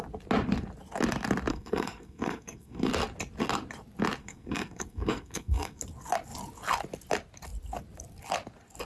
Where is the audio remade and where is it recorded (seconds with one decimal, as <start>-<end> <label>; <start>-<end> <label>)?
0.0-1.5 recorded; 1.5-2.9 remade; 2.9-4.2 recorded; 4.2-5.8 remade; 5.8-8.8 recorded